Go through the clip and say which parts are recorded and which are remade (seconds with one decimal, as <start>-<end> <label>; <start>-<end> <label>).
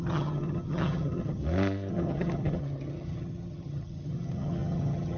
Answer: 0.0-1.4 remade; 1.4-1.9 recorded; 1.9-5.2 remade